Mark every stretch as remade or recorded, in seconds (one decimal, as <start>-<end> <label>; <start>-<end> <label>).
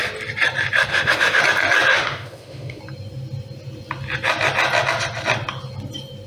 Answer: 0.0-0.9 recorded; 0.9-1.4 remade; 1.4-1.9 recorded; 1.9-2.8 remade; 2.8-6.3 recorded